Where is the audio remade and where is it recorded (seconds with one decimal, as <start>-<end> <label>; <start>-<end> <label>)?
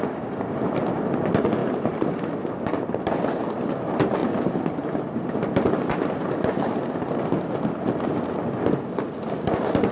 0.0-1.6 recorded; 1.6-2.3 remade; 2.3-9.9 recorded